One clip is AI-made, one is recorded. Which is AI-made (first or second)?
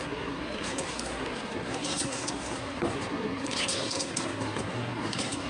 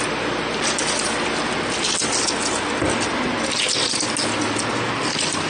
first